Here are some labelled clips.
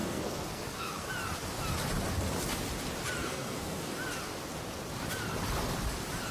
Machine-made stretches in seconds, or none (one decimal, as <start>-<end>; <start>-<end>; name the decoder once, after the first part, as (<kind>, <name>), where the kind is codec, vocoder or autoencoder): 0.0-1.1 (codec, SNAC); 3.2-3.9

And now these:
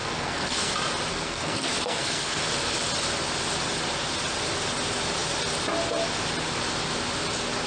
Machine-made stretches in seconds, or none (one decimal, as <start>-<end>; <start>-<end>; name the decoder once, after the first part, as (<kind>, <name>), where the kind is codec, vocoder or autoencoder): 0.0-0.7 (codec, SNAC); 1.1-2.4

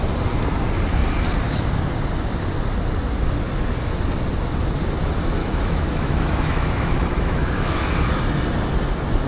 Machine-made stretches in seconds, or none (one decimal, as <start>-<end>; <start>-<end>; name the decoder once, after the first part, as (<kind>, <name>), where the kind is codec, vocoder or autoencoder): 5.4-8.2 (autoencoder, DAC-VAE)

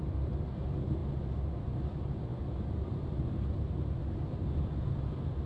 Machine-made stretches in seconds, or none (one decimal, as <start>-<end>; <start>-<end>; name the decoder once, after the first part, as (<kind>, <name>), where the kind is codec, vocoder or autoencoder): none

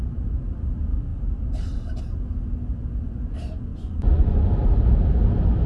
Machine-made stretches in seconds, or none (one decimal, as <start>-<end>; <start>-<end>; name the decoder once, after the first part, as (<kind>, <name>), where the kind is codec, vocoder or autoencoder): 3.7-4.5 (vocoder, Vocos)

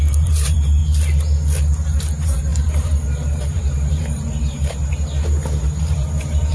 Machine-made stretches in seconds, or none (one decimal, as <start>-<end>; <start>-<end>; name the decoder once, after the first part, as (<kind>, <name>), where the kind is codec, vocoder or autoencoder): 0.0-0.8 (vocoder, BigVGAN v2); 2.0-4.8; 5.8-6.5